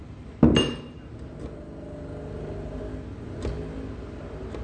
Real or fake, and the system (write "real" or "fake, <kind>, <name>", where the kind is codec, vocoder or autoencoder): real